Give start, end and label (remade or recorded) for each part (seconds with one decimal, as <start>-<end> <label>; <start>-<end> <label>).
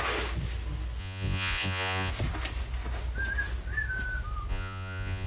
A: 0.0-1.0 recorded; 1.0-2.1 remade; 2.1-4.5 recorded; 4.5-5.3 remade